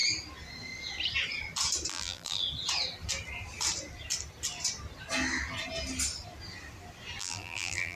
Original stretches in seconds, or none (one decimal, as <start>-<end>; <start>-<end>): 0.0-1.9; 2.4-7.2